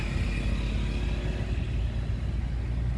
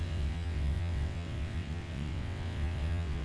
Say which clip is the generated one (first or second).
second